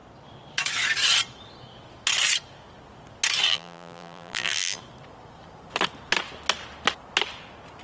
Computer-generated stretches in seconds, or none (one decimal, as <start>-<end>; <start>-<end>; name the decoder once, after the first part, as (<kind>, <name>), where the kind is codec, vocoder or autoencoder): 3.5-4.8 (vocoder, BigVGAN v2)